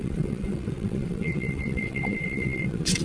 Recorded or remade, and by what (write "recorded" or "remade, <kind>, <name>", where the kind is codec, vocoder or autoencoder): remade, vocoder, WaveNeXt